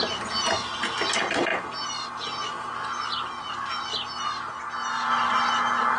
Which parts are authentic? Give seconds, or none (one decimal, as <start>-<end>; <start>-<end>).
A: 0.0-6.0